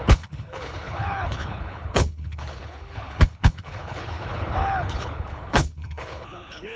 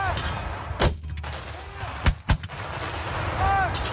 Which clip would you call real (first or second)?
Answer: second